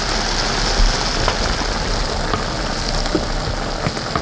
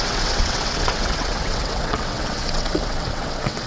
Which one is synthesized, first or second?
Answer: second